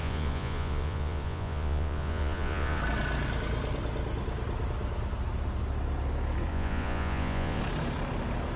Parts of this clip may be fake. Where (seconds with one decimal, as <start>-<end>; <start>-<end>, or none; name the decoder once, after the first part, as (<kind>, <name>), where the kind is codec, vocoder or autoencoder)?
0.0-2.8 (vocoder, Vocos); 6.5-7.6